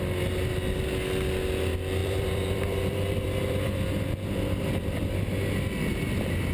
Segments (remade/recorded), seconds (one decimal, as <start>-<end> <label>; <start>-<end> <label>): 0.0-2.0 recorded; 2.0-5.3 remade; 5.3-6.5 recorded